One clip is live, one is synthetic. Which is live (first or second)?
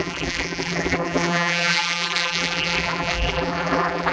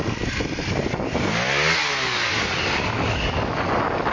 second